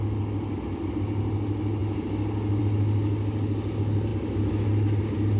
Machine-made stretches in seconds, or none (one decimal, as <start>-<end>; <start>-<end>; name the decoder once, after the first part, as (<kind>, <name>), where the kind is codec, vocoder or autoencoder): none